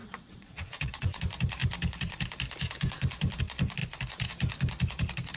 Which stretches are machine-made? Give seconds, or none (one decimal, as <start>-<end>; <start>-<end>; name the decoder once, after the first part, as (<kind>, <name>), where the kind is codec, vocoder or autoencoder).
0.0-1.2 (vocoder, WaveNeXt)